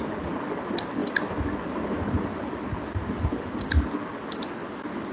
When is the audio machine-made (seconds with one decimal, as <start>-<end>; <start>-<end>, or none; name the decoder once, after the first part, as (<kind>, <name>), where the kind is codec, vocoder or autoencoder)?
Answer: none